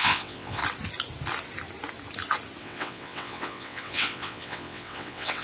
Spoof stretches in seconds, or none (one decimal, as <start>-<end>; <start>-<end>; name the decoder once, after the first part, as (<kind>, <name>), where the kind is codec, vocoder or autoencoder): 0.0-0.6 (vocoder, WaveNeXt); 2.6-5.4